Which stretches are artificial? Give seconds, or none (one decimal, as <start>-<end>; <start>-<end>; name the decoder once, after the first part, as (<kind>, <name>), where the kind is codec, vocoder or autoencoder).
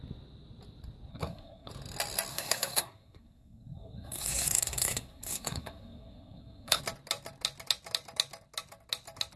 1.1-1.7 (codec, SNAC); 2.3-6.8